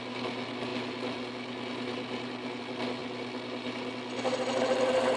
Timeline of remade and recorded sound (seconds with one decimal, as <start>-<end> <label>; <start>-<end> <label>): 0.0-5.2 recorded